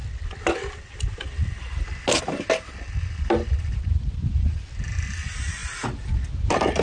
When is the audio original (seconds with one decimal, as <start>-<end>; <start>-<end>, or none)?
0.0-6.8